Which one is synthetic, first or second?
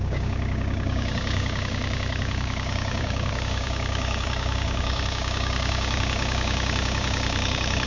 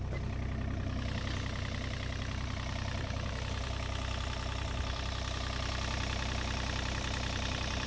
first